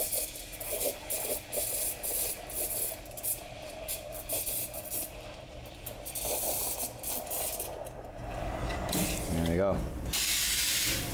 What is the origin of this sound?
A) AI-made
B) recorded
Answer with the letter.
A